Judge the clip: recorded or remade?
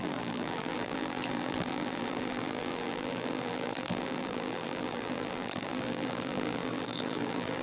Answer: remade